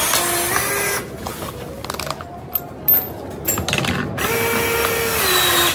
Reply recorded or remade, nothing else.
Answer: recorded